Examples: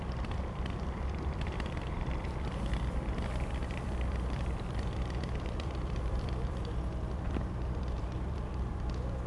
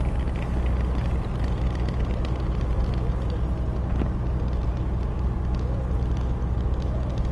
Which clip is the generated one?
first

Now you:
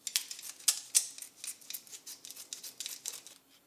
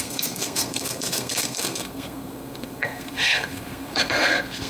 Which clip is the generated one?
second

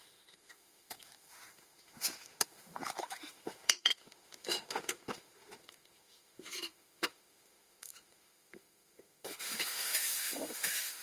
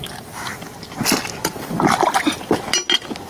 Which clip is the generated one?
first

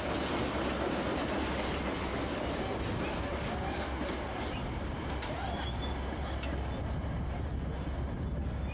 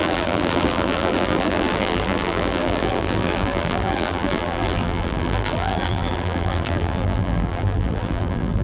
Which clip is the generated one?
second